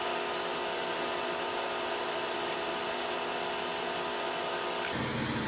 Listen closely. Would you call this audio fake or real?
real